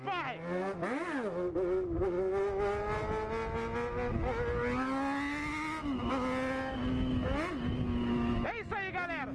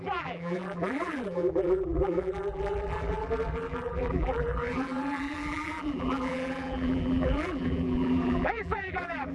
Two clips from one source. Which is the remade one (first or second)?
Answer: second